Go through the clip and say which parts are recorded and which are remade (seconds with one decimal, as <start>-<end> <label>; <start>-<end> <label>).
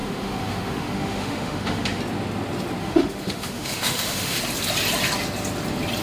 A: 0.0-2.0 remade; 2.0-2.8 recorded; 2.8-4.4 remade; 4.4-6.0 recorded